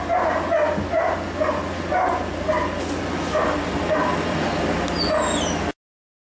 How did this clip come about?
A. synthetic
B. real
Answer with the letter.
B